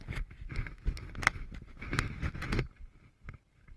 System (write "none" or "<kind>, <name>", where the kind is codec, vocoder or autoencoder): none